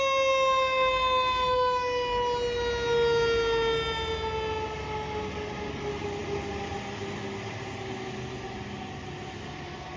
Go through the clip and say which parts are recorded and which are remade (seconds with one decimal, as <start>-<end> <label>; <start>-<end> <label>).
0.0-10.0 recorded